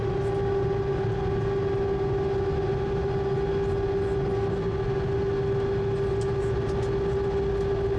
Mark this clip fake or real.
real